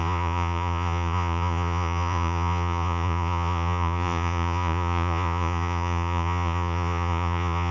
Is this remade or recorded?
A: remade